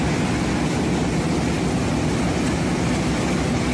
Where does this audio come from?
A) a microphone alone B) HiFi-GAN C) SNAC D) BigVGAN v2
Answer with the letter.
A